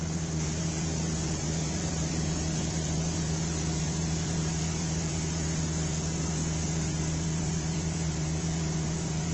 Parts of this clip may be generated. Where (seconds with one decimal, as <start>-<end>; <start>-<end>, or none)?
0.0-9.3